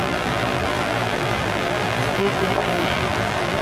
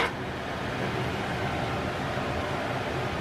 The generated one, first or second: first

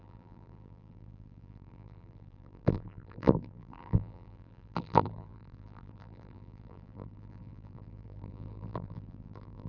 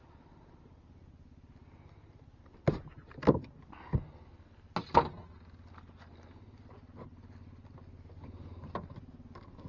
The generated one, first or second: first